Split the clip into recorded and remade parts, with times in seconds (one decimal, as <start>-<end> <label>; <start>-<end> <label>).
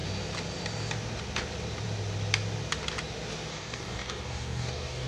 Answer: 0.0-3.5 recorded; 3.5-5.1 remade